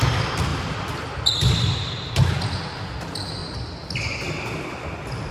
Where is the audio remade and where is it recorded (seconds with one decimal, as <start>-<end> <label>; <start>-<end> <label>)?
0.0-0.5 recorded; 0.5-2.1 remade; 2.1-5.3 recorded